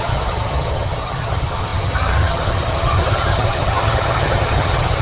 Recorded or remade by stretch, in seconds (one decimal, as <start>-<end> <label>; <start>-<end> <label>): 0.0-5.0 remade